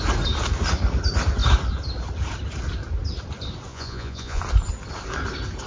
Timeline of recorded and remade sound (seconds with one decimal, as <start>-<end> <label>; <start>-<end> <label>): 0.0-3.7 recorded; 3.7-4.4 remade; 4.4-5.7 recorded